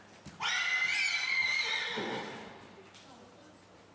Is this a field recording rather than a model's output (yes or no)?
yes